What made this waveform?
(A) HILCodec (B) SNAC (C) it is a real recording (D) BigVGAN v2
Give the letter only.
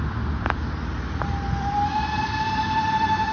D